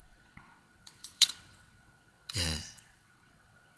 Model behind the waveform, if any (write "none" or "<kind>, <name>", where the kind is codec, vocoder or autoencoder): vocoder, WaveNeXt